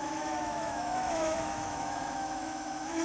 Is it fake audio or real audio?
fake